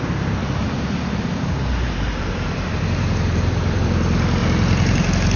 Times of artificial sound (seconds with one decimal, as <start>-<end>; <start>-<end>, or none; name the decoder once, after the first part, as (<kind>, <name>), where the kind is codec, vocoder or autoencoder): 0.6-3.8 (vocoder, BigVGAN v2); 4.4-5.4